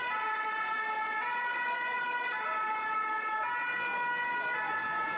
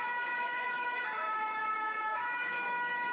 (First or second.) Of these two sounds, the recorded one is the first